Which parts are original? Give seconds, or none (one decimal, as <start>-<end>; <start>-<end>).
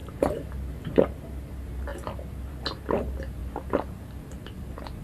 0.0-5.0